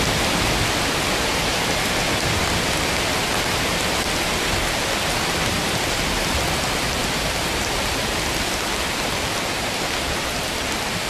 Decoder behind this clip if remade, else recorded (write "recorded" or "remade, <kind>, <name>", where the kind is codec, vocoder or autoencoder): recorded